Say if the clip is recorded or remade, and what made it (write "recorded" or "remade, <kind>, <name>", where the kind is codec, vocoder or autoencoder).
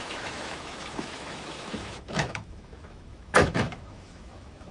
remade, autoencoder, DAC-VAE